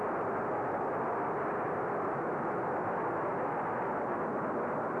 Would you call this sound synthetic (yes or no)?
no